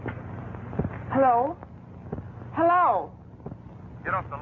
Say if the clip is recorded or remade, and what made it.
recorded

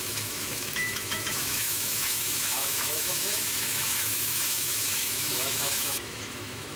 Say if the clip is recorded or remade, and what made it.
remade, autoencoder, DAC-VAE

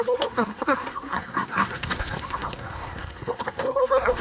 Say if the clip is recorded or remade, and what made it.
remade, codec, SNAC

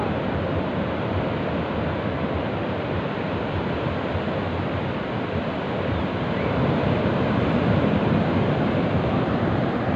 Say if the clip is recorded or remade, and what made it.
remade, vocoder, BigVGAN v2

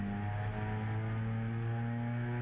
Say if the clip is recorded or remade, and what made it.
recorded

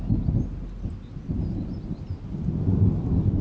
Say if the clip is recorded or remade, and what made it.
recorded